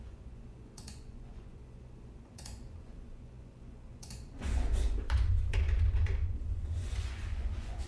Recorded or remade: remade